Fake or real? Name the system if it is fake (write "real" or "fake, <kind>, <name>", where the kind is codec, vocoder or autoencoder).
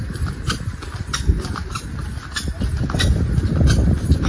real